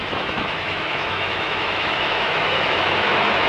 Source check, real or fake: fake